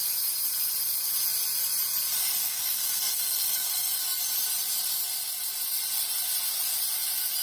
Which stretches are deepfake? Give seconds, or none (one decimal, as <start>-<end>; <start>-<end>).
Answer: 2.4-4.0